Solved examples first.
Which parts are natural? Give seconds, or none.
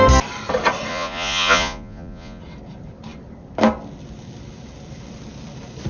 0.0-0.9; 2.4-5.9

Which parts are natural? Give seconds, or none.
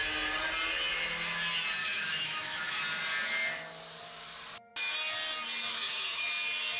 0.0-1.8; 2.8-5.7; 6.3-6.8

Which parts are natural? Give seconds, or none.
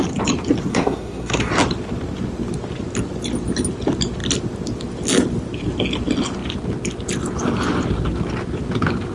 0.0-0.7; 1.5-9.1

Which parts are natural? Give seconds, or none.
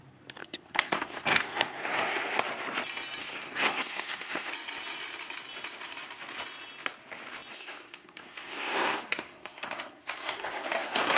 0.0-0.4; 2.4-3.2; 4.5-7.5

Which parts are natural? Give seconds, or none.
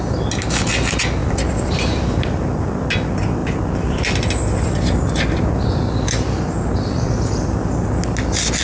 0.0-1.2; 2.4-3.4; 6.7-8.6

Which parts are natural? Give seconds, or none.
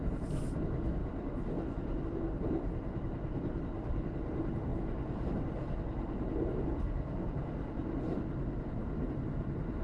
7.8-8.6